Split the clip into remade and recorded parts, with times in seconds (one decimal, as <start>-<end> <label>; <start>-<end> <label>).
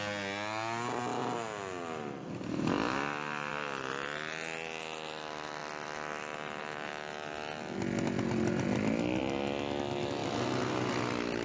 0.0-11.4 recorded